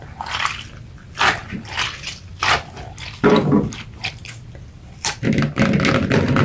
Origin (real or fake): real